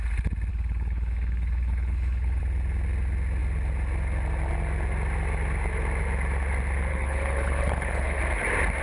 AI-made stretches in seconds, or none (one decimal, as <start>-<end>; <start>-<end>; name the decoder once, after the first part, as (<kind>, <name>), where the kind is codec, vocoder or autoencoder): 0.5-2.4 (codec, HILCodec); 6.9-8.2

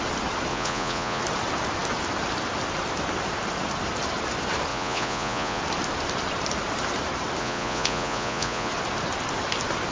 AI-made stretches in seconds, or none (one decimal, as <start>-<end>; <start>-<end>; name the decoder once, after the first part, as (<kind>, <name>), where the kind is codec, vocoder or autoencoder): 0.5-1.2 (vocoder, Vocos); 4.7-5.6; 7.4-8.7

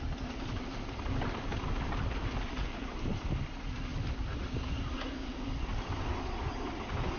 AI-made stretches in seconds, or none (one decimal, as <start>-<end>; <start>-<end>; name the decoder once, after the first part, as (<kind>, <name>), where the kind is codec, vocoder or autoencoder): none

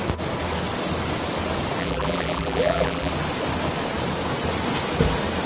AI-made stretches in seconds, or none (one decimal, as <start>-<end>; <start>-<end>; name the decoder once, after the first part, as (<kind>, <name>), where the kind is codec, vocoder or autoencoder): 1.8-3.1 (vocoder, BigVGAN v2)

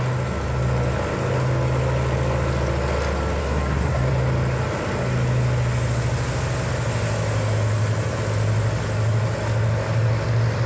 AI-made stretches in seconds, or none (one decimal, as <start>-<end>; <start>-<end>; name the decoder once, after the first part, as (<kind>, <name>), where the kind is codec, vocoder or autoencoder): 3.4-4.1 (codec, SNAC)

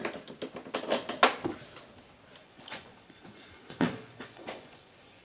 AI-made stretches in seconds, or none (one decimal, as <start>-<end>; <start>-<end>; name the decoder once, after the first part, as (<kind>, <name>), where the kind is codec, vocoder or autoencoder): 2.4-5.2 (vocoder, Vocos)

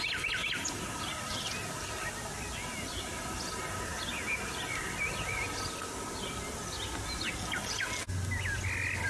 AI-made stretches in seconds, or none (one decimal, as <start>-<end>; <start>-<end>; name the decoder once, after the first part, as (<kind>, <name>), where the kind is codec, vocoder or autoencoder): none